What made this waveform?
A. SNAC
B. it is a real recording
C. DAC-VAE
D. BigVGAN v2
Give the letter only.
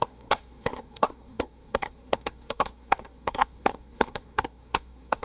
A